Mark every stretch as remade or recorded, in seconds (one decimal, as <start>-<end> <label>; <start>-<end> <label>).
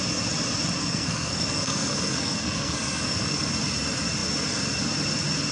0.0-0.8 recorded; 0.8-3.5 remade; 3.5-5.5 recorded